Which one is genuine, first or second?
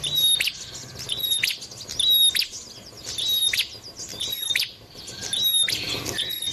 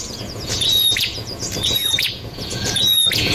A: first